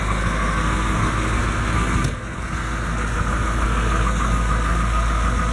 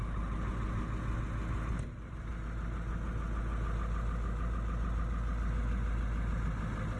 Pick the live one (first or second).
second